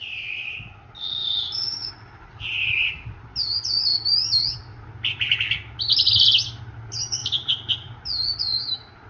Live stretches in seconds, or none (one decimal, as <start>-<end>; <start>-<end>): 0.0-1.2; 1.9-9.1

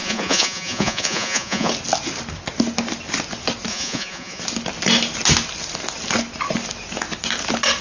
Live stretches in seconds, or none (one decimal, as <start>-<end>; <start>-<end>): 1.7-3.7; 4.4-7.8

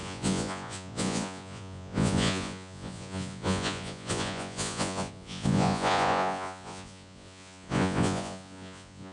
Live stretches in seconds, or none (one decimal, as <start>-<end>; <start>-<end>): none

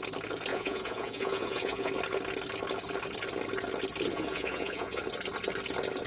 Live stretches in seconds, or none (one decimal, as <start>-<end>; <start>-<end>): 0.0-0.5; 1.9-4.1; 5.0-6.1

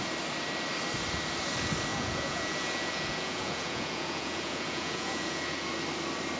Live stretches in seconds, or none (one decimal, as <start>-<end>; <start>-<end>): 0.0-1.9; 5.7-6.4

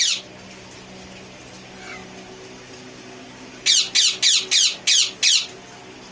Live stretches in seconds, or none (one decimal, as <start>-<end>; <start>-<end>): 0.0-6.1

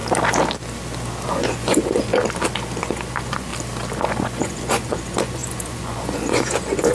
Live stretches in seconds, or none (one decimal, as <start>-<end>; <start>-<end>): 0.0-1.3; 2.1-2.8; 3.5-4.1